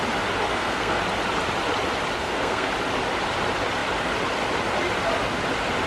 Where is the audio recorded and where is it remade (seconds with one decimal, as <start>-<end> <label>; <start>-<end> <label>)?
0.0-0.5 recorded; 0.5-1.0 remade; 1.0-2.2 recorded; 2.2-2.7 remade; 2.7-5.9 recorded

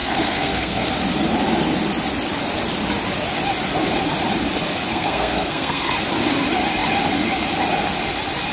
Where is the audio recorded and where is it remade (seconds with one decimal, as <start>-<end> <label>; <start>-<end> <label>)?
0.0-0.9 remade; 0.9-4.9 recorded; 4.9-5.9 remade; 5.9-8.5 recorded

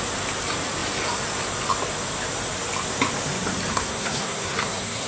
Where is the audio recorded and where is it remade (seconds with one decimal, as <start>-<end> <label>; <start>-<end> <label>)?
0.0-3.7 recorded; 3.7-5.1 remade

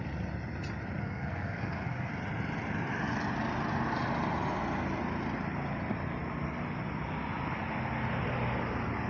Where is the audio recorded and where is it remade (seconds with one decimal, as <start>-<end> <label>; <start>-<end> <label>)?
0.0-1.0 recorded; 1.0-2.1 remade; 2.1-9.1 recorded

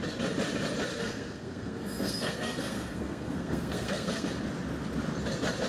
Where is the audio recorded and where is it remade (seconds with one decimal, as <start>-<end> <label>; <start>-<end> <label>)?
0.0-0.9 recorded; 0.9-4.3 remade; 4.3-5.7 recorded

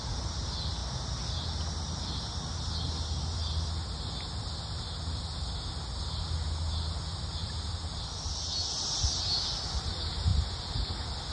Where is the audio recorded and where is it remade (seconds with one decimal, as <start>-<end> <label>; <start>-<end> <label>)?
0.0-11.3 recorded

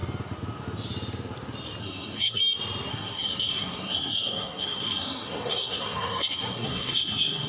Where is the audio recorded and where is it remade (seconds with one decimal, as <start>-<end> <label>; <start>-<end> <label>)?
0.0-1.8 recorded; 1.8-2.4 remade; 2.4-2.9 recorded; 2.9-7.5 remade